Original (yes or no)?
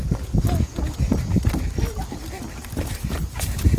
yes